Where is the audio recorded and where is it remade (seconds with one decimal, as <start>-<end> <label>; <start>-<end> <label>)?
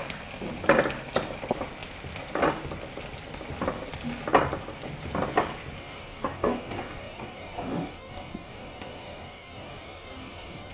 0.0-5.8 recorded; 5.8-10.7 remade